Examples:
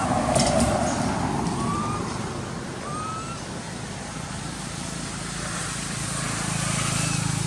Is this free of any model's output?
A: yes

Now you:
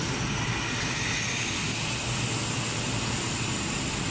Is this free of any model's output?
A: yes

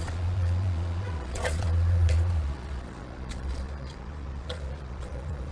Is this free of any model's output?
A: no